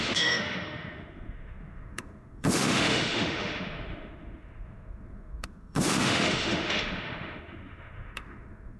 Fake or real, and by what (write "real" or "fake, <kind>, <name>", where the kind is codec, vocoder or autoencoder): fake, autoencoder, DAC-VAE